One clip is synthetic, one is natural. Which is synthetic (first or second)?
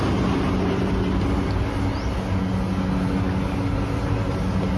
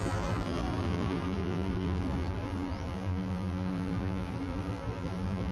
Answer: second